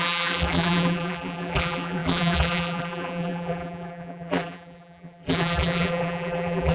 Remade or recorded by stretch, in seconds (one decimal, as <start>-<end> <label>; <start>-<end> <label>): 0.0-6.7 remade